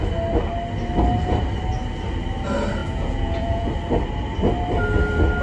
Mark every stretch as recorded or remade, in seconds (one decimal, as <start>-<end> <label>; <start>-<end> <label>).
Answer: 0.0-2.8 recorded; 2.8-3.7 remade; 3.7-5.4 recorded